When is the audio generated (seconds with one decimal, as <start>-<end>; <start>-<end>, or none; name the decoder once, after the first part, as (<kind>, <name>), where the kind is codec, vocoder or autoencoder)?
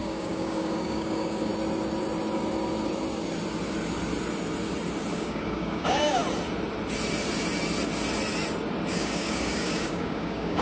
0.0-1.5 (codec, DAC); 5.1-6.2; 8.9-10.6